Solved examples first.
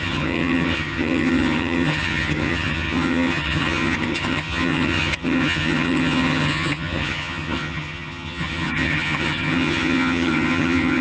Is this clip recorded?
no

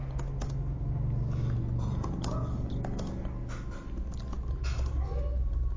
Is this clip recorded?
yes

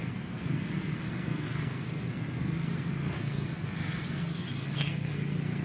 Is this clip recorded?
no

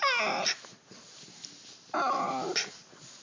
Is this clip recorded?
yes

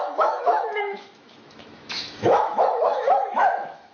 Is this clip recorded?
no